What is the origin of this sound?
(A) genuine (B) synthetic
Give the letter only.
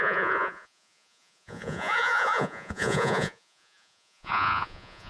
B